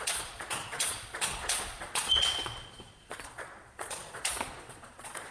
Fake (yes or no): yes